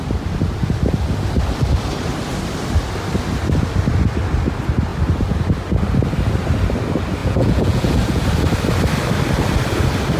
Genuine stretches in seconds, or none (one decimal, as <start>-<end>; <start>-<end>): 0.0-7.2; 8.2-10.2